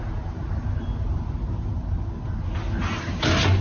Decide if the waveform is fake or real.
real